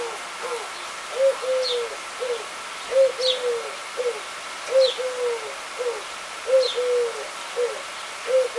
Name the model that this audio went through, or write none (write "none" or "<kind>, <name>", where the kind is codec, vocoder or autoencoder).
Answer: none